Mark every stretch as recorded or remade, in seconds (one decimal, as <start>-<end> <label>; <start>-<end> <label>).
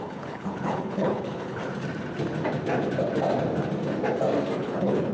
0.0-1.6 remade; 1.6-4.6 recorded; 4.6-5.1 remade